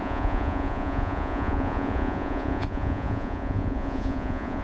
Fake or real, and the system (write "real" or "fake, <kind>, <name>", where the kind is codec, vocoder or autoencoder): fake, vocoder, Vocos